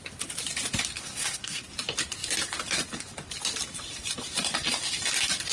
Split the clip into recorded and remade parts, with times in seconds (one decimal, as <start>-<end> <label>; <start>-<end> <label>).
0.0-1.0 recorded; 1.0-1.6 remade; 1.6-5.5 recorded